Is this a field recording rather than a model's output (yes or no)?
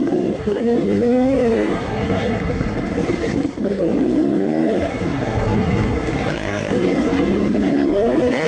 no